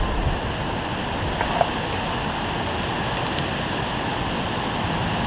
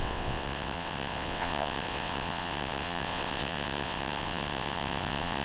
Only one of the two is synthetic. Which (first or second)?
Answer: second